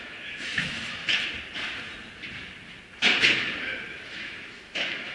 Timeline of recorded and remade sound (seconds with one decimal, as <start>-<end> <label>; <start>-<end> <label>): 0.0-1.0 remade; 1.0-3.9 recorded; 3.9-5.1 remade